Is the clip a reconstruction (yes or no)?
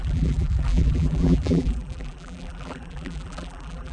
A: yes